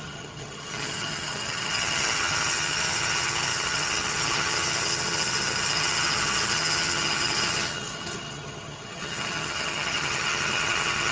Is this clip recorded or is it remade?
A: remade